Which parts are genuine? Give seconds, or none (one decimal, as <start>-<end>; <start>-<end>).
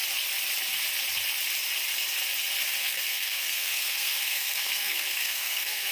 0.0-2.8